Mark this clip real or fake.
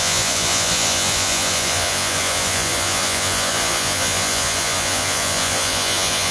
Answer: fake